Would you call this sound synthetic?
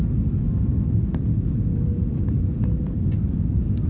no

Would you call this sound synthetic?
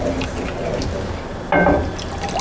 no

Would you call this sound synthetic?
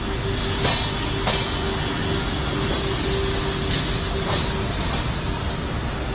no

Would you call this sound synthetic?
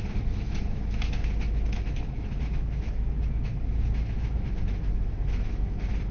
yes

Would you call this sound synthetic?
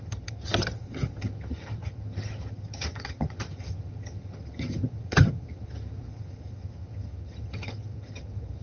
yes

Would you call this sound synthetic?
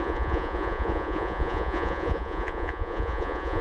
yes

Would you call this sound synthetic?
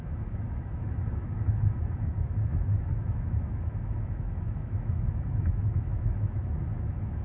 yes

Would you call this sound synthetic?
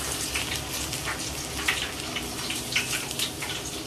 no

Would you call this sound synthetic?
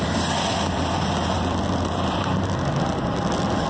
no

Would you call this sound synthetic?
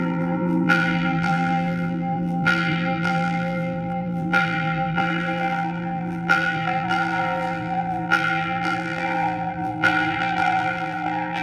yes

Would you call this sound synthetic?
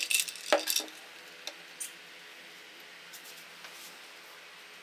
no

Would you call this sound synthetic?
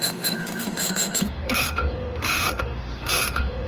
yes